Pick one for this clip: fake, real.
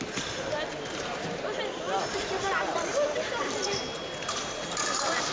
real